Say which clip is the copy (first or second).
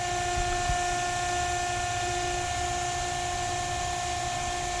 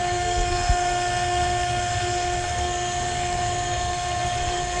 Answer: second